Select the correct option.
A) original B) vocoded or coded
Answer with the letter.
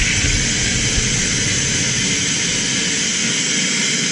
A